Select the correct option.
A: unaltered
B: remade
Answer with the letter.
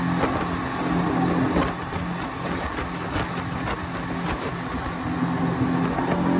A